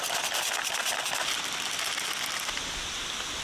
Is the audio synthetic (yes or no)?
no